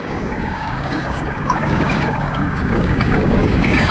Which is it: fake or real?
fake